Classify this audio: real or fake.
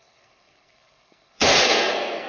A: fake